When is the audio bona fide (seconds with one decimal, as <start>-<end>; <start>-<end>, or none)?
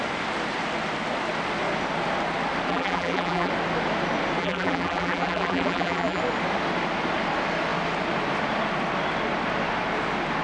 0.0-2.7; 3.5-4.4; 6.2-10.4